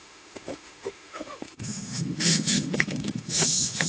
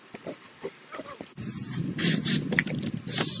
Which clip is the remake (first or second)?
first